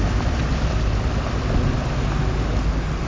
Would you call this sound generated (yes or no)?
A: no